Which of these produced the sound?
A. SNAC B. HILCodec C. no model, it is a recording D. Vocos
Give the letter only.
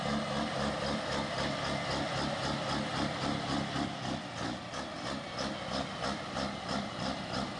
C